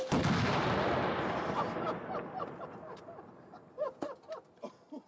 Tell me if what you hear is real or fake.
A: real